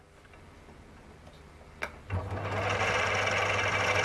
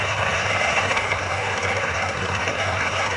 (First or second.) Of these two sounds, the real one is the first